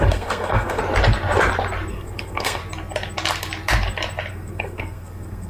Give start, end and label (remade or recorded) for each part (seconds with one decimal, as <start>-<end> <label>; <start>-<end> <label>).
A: 0.0-0.8 remade; 0.8-1.9 recorded; 1.9-2.6 remade; 2.6-4.3 recorded; 4.3-5.5 remade